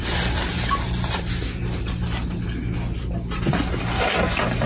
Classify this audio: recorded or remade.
recorded